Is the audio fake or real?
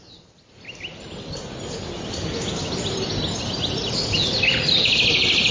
real